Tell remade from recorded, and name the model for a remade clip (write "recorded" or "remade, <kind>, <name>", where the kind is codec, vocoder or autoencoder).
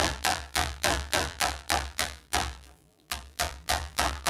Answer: remade, vocoder, BigVGAN v2